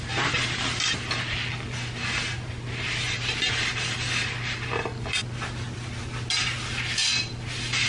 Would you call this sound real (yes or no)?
yes